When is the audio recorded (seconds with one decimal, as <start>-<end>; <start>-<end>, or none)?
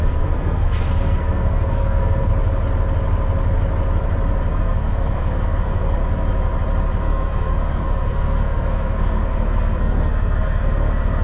2.3-4.5; 6.0-7.0